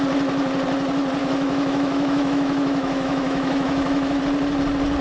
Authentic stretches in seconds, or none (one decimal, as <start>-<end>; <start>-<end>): 0.0-1.2; 4.2-5.0